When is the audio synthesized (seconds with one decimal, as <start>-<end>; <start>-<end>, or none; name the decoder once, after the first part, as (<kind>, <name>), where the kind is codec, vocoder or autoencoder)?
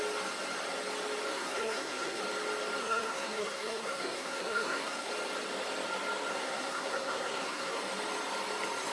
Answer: 1.3-2.2 (codec, SNAC); 2.8-5.1; 6.3-7.8